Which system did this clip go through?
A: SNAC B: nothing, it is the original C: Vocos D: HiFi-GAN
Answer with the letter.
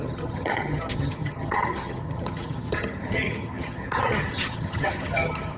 D